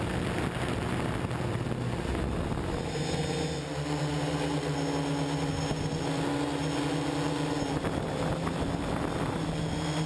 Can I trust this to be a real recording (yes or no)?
yes